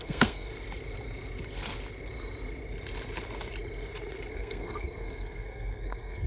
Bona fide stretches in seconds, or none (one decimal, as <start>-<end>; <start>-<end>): 0.5-4.3